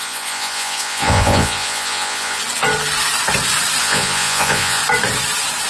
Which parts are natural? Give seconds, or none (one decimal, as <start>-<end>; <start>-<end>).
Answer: 2.4-3.8; 4.8-5.7